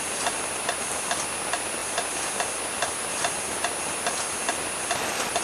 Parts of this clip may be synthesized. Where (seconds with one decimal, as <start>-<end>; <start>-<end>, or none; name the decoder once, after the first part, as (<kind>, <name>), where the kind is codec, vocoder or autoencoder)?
none